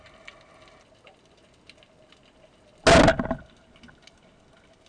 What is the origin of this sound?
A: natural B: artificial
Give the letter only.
A